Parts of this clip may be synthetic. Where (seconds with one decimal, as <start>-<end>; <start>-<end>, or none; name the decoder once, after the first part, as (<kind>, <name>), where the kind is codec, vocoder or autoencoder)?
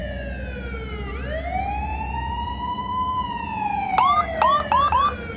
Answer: 1.9-3.9 (vocoder, Vocos)